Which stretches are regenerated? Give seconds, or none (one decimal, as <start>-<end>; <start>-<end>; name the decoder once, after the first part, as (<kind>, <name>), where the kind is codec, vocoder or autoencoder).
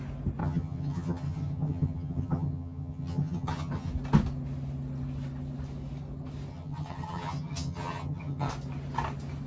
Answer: 0.4-3.9 (vocoder, HiFi-GAN); 6.5-8.5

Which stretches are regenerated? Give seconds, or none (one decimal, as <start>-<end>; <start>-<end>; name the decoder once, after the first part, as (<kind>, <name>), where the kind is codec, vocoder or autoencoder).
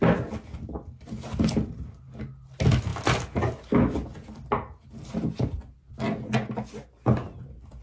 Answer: none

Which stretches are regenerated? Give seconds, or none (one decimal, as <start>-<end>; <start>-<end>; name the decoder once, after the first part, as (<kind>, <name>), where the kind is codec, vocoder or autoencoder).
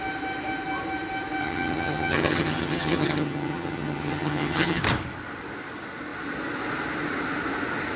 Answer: 1.4-4.8 (vocoder, HiFi-GAN)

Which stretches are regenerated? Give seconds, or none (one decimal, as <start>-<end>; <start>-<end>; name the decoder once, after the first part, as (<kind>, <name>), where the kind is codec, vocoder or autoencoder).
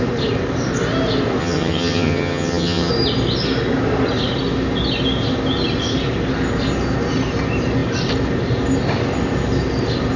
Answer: 1.4-2.9 (vocoder, HiFi-GAN)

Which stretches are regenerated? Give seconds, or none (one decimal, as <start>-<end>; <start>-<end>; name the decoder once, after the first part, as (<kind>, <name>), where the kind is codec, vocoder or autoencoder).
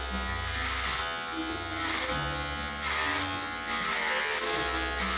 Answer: none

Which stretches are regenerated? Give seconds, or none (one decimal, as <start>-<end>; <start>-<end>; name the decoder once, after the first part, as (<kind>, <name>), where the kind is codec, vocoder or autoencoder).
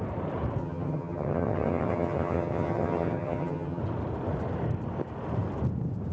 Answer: 0.6-3.8 (vocoder, HiFi-GAN)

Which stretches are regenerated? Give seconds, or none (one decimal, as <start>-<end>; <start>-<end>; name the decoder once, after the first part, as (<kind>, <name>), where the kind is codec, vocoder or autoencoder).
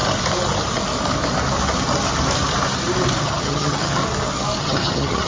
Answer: 3.2-4.0 (vocoder, HiFi-GAN); 4.6-5.3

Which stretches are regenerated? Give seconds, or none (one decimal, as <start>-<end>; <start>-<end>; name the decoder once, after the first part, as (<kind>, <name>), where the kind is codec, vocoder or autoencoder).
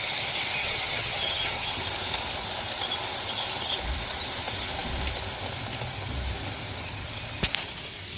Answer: 0.6-1.8 (vocoder, HiFi-GAN)